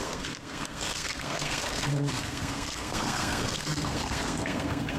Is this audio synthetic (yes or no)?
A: yes